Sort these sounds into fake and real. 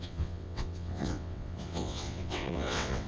fake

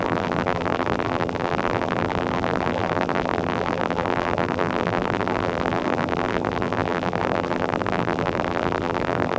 fake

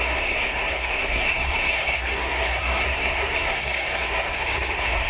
fake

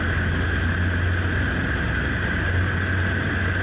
real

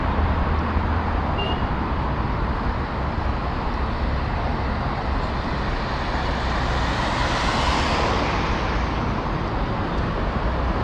real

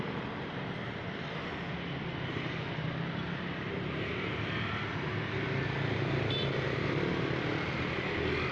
real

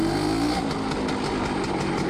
real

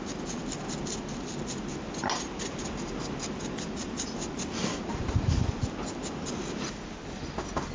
real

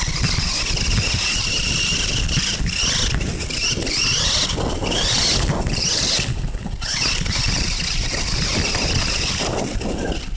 real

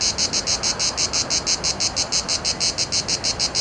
real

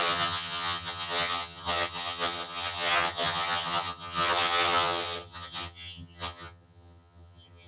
fake